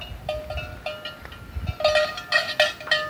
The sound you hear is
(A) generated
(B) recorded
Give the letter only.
B